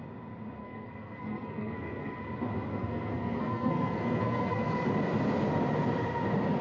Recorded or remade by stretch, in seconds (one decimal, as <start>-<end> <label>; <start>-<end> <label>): 0.0-0.6 recorded; 0.6-2.2 remade; 2.2-2.7 recorded; 2.7-4.7 remade; 4.7-6.6 recorded